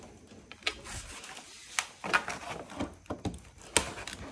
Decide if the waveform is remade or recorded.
recorded